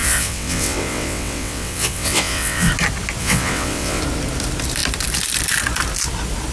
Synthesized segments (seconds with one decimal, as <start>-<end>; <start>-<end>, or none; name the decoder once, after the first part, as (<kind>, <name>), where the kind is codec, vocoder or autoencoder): 0.0-2.7 (vocoder, WaveNeXt); 3.2-4.0